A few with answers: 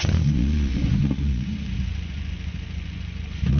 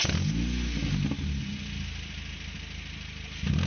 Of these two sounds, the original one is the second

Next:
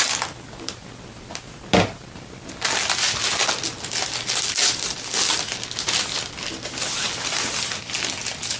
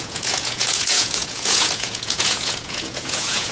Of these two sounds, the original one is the first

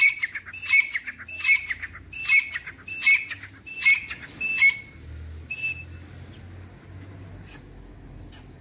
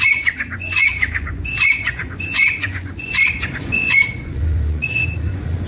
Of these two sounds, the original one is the first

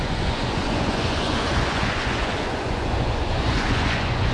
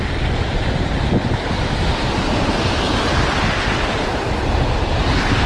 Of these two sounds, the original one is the second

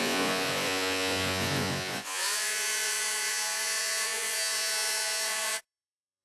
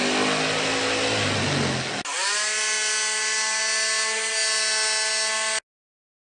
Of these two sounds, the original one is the second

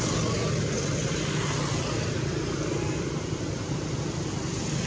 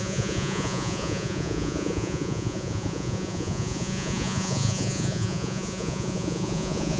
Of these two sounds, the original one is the first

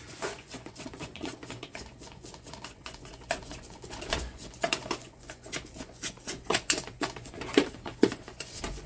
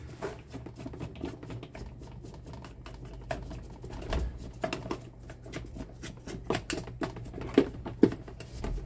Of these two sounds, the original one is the second